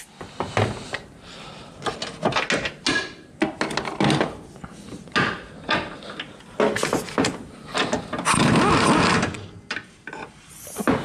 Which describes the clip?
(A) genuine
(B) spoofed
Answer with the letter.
A